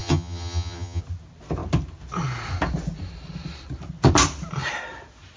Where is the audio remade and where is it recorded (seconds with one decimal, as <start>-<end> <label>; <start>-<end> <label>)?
0.0-1.0 remade; 1.0-5.4 recorded